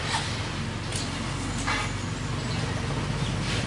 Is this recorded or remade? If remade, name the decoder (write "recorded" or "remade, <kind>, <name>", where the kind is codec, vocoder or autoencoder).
recorded